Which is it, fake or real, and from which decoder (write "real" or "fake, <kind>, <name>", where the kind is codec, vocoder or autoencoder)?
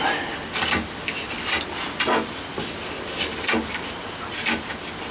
real